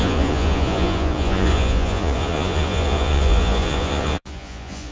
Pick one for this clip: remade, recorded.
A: remade